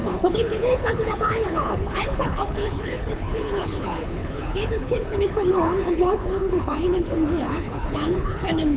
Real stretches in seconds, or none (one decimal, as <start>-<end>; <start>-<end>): none